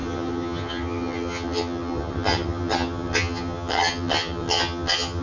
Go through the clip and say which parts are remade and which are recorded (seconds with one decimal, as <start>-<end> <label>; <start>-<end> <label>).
0.0-5.2 remade